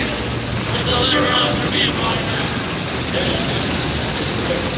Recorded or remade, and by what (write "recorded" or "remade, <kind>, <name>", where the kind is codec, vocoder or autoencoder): recorded